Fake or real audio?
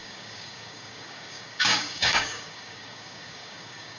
fake